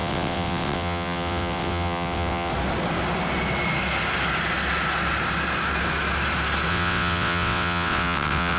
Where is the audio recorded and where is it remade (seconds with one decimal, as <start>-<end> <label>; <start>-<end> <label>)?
0.0-2.5 remade; 2.5-6.7 recorded; 6.7-8.6 remade